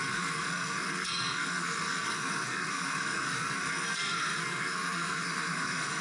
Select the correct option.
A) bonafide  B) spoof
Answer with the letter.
B